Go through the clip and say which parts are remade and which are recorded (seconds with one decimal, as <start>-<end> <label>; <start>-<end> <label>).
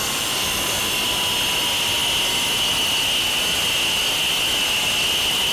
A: 0.0-5.5 recorded